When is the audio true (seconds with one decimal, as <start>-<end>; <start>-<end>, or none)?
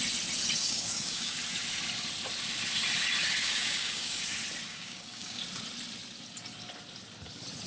0.0-0.6; 1.4-3.4; 4.2-4.7; 5.4-7.7